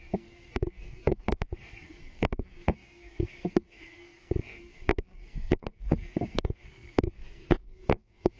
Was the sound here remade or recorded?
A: remade